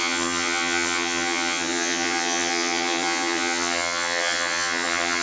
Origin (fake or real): fake